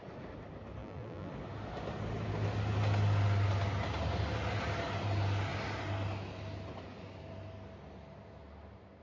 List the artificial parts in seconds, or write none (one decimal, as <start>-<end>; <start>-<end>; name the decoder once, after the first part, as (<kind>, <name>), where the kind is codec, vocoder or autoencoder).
0.8-1.3 (vocoder, BigVGAN v2)